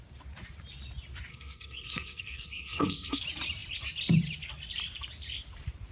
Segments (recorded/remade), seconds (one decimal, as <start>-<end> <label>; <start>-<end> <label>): 0.0-1.3 recorded; 1.3-3.2 remade; 3.2-5.9 recorded